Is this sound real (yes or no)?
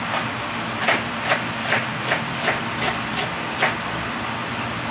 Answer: yes